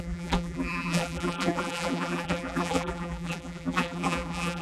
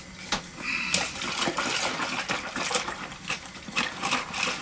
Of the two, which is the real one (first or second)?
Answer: second